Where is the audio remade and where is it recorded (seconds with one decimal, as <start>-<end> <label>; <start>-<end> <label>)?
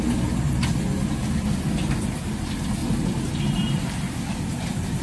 0.0-5.0 recorded